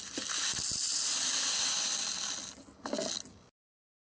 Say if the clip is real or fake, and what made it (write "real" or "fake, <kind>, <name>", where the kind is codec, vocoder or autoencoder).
real